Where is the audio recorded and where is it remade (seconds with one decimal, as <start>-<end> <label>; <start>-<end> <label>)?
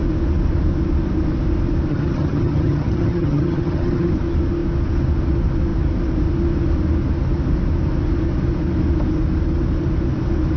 0.0-1.9 recorded; 1.9-4.1 remade; 4.1-10.6 recorded